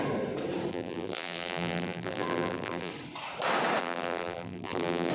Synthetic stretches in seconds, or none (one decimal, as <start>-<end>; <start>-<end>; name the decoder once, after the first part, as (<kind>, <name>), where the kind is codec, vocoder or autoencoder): 0.7-2.9 (vocoder, BigVGAN v2); 3.8-5.1

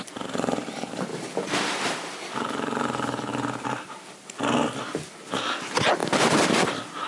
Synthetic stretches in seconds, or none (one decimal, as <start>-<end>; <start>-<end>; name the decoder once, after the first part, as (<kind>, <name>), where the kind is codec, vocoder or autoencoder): 1.1-3.3 (vocoder, BigVGAN v2); 6.0-7.1

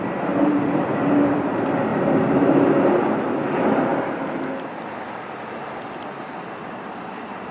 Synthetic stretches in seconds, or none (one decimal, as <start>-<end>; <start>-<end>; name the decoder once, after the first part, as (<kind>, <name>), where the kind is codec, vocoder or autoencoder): 0.0-1.9 (vocoder, BigVGAN v2); 3.5-3.9; 6.3-7.5

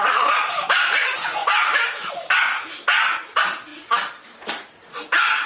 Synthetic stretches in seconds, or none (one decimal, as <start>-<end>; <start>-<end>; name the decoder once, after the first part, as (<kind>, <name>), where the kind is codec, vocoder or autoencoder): 1.4-2.1 (vocoder, BigVGAN v2); 3.7-4.7

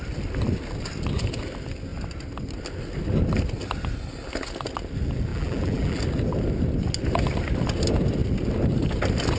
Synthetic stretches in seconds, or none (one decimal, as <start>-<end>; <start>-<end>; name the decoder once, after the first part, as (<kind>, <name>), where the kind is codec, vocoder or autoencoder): 5.3-6.0 (vocoder, BigVGAN v2)

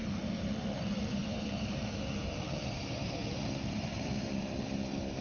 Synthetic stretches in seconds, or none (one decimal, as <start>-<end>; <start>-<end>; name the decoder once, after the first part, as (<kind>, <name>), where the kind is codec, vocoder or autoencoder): 0.0-5.2 (vocoder, BigVGAN v2)